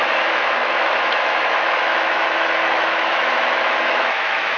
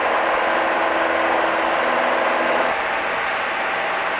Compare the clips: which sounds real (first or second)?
second